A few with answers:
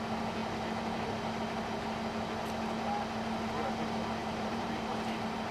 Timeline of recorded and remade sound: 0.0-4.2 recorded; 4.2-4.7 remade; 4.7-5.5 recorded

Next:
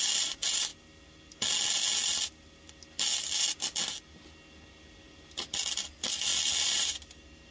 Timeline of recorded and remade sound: 0.0-7.5 recorded

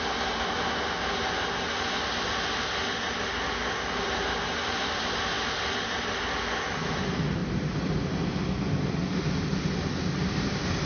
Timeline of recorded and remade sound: 0.0-3.6 recorded; 3.6-6.2 remade; 6.2-7.4 recorded; 7.4-9.2 remade; 9.2-10.9 recorded

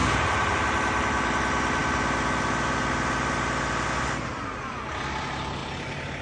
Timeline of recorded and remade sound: 0.0-0.6 remade; 0.6-5.6 recorded; 5.6-6.2 remade

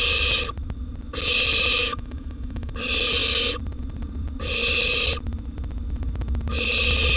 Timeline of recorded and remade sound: 0.0-1.8 recorded; 1.8-2.7 remade; 2.7-7.2 recorded

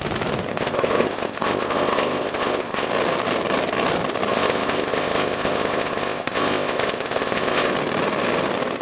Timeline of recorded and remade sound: 0.0-0.5 recorded; 0.5-2.9 remade; 2.9-4.3 recorded; 4.3-7.7 remade; 7.7-8.8 recorded

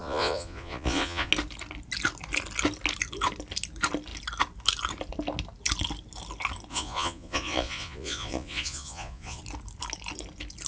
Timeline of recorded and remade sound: 0.0-1.3 remade; 1.3-6.7 recorded; 6.7-9.4 remade; 9.4-10.7 recorded